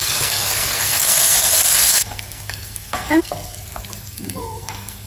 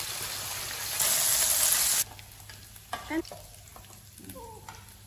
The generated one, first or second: first